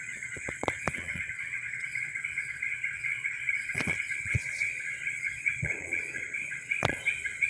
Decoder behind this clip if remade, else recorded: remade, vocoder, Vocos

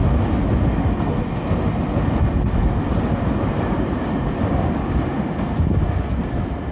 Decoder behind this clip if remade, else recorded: recorded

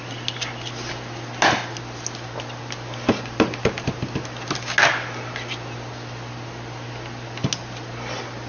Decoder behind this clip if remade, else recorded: recorded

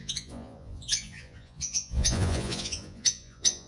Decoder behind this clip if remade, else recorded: remade, vocoder, Vocos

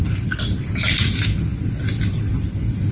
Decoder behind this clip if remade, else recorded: recorded